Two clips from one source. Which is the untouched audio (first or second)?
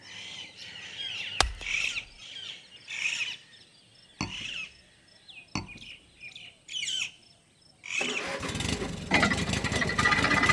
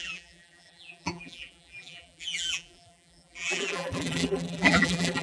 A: first